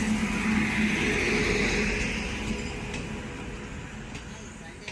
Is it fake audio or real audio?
real